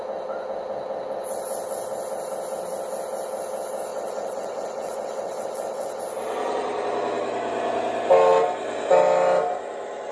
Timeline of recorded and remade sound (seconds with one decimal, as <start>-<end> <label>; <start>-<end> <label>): 0.0-3.9 recorded; 3.9-6.0 remade; 6.0-10.1 recorded